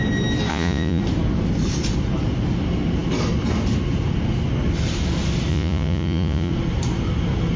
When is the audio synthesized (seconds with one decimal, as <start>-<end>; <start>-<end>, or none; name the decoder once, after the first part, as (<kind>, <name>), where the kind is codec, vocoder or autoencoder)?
0.5-1.0 (vocoder, Vocos); 5.5-6.5